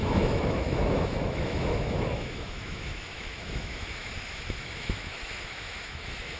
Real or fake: fake